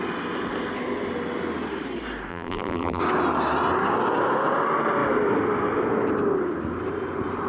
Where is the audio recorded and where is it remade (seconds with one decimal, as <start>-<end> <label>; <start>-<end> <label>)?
0.0-2.3 recorded; 2.3-3.0 remade; 3.0-7.5 recorded